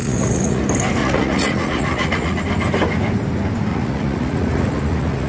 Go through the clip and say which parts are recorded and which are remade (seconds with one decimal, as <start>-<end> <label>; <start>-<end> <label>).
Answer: 0.0-0.6 remade; 0.6-1.0 recorded; 1.0-2.4 remade; 2.4-3.7 recorded; 3.7-5.3 remade